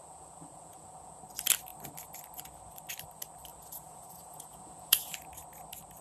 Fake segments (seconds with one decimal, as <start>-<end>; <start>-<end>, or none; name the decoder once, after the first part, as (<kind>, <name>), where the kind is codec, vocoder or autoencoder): 0.0-1.2 (vocoder, Vocos); 3.5-5.1

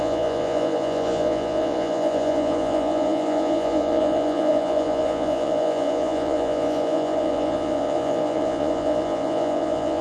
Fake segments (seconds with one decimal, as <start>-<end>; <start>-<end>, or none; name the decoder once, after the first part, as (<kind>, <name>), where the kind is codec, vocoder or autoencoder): 0.0-10.0 (vocoder, Vocos)

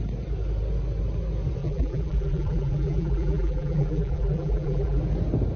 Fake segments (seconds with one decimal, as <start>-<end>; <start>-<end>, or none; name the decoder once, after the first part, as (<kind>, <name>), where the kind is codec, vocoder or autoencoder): 1.6-5.0 (vocoder, BigVGAN v2)

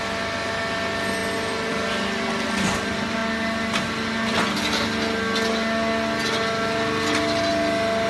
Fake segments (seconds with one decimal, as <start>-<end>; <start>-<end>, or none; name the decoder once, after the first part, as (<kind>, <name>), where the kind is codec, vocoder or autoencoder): none

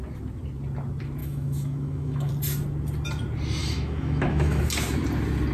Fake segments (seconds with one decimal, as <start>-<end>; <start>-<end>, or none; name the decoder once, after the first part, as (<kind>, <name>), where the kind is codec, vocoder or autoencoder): 1.2-2.3 (autoencoder, DAC-VAE); 3.6-4.6

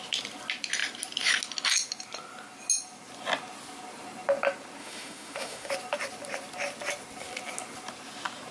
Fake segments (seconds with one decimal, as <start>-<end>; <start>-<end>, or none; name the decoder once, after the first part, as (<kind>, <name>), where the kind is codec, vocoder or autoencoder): 4.8-5.7 (autoencoder, DAC-VAE)